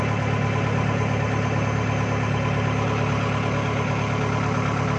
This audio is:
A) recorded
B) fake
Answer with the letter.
A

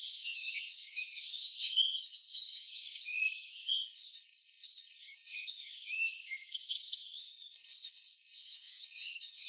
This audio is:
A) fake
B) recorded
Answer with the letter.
A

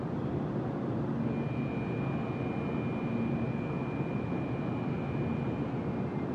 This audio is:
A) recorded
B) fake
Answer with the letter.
A